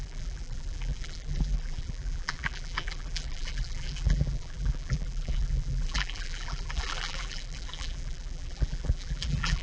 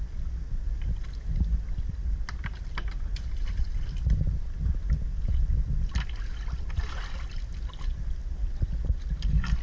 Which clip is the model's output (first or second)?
first